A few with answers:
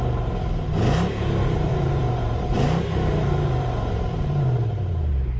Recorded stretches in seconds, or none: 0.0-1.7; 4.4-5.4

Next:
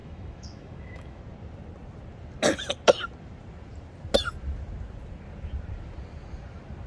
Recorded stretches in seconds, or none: 1.2-6.9